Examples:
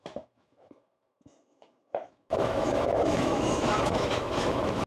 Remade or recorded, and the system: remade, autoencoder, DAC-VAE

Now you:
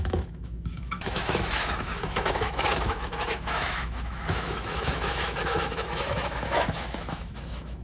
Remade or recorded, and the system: remade, autoencoder, DAC-VAE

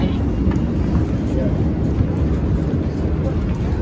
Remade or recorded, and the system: recorded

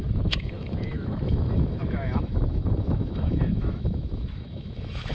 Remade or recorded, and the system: remade, autoencoder, DAC-VAE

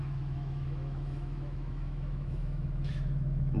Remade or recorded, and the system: remade, autoencoder, DAC-VAE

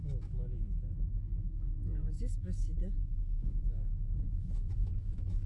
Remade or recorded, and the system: remade, autoencoder, DAC-VAE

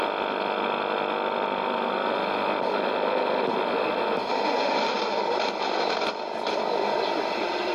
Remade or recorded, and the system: recorded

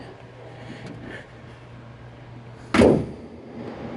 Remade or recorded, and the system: recorded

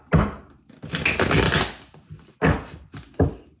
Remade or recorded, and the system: recorded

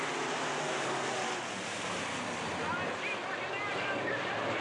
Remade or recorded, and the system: recorded